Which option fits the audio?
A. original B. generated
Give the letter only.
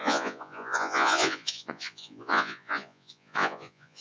B